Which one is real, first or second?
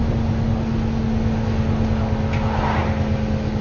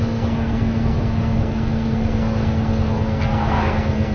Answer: first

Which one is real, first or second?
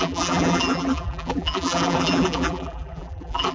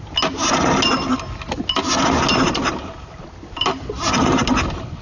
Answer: second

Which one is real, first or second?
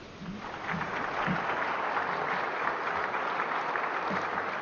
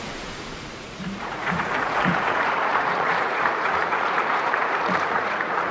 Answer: first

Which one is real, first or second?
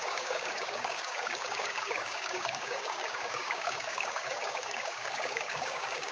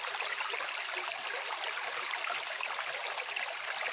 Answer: second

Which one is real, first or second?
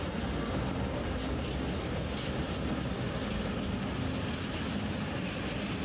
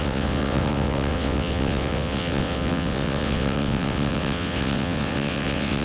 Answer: first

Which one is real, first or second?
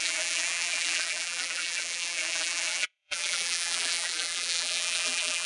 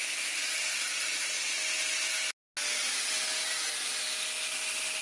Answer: second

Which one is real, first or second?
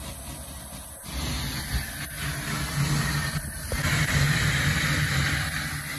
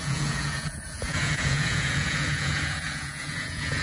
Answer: first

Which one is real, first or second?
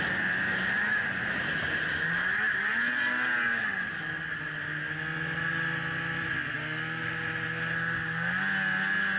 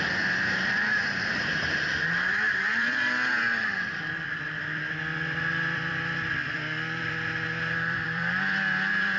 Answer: first